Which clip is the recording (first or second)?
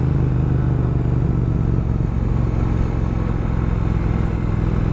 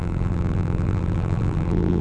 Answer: first